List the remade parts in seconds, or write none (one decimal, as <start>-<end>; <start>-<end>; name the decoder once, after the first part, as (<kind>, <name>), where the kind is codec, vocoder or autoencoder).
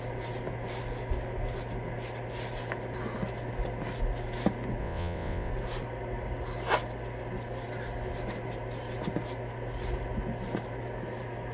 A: 4.8-5.5 (vocoder, WaveNeXt)